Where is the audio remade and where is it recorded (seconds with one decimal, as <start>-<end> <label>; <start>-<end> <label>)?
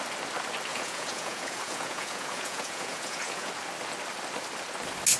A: 0.0-0.7 recorded; 0.7-3.5 remade; 3.5-5.2 recorded